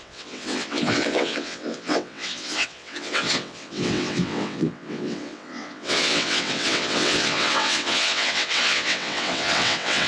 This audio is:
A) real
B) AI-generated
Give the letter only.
B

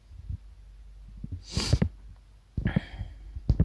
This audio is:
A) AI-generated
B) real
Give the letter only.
B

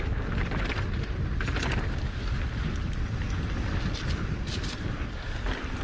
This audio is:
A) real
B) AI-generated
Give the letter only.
A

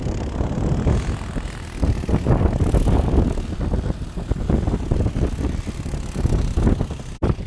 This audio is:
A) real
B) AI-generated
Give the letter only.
A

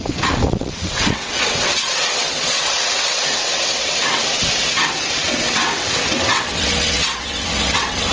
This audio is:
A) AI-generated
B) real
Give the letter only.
A